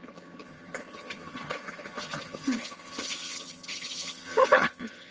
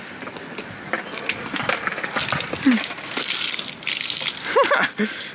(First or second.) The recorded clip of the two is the second